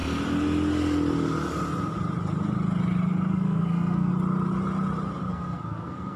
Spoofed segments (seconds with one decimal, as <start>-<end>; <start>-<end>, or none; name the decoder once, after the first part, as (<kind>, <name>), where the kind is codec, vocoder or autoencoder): 3.3-4.1 (codec, SNAC); 5.3-6.2